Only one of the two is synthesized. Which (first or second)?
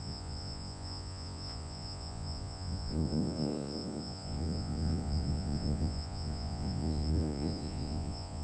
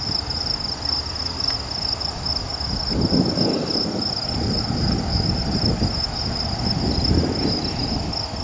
first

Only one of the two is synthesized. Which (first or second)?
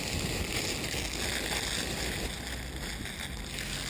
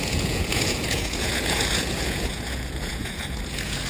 second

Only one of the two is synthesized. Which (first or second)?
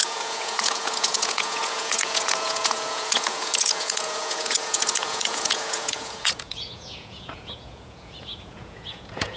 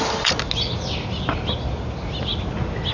first